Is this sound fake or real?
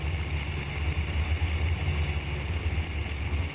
real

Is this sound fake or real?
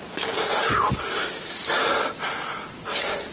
real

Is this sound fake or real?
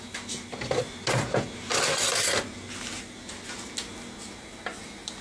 real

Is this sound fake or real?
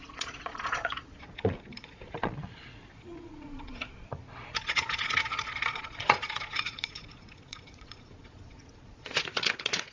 fake